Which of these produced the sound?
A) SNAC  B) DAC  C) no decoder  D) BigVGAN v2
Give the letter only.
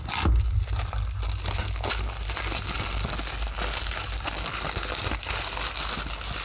C